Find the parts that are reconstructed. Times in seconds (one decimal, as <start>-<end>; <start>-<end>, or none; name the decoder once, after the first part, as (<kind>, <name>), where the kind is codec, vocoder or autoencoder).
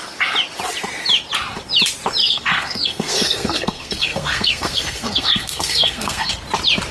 2.2-6.3 (codec, SNAC)